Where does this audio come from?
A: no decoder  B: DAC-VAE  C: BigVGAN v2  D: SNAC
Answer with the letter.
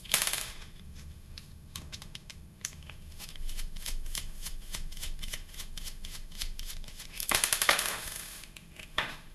B